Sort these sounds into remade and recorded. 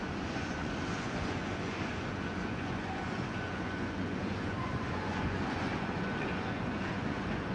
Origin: remade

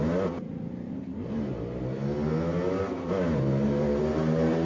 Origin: recorded